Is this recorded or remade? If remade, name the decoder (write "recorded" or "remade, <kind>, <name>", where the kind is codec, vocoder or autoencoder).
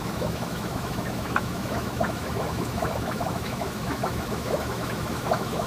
remade, autoencoder, DAC-VAE